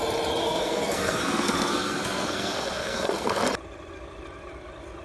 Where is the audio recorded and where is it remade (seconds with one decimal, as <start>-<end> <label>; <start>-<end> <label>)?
0.0-0.4 recorded; 0.4-3.4 remade; 3.4-5.0 recorded